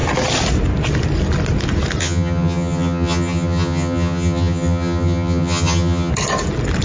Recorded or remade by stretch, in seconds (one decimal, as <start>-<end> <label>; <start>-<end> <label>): 0.0-2.0 recorded; 2.0-6.1 remade; 6.1-6.8 recorded